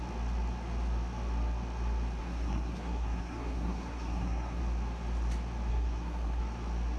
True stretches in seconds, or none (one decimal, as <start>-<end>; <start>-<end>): 0.0-2.2; 4.6-5.7; 6.4-7.0